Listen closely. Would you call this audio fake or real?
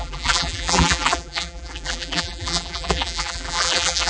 fake